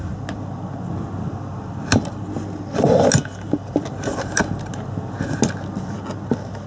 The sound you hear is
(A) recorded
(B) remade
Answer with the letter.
A